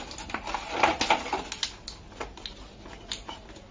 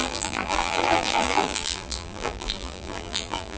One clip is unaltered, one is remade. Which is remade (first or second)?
second